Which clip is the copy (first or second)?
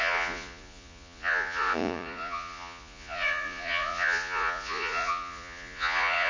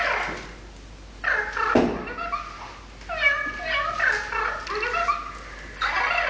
first